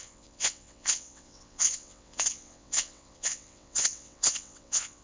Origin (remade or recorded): remade